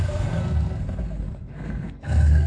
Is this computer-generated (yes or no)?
yes